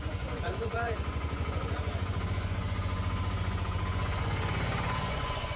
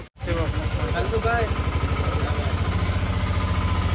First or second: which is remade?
first